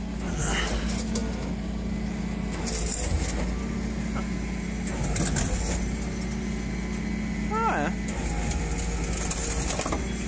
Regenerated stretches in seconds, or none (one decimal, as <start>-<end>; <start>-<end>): none

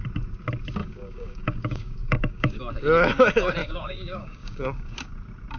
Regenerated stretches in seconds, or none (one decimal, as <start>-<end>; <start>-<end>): 0.8-2.6; 3.6-5.1

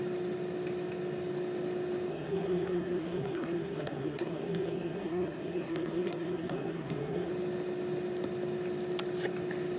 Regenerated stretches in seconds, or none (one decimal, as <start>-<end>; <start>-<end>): 2.1-7.3